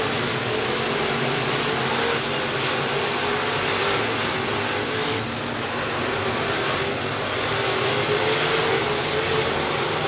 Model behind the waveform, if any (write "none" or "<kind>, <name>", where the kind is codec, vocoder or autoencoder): none